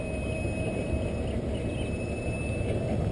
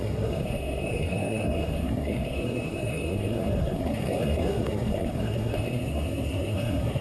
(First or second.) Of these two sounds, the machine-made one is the second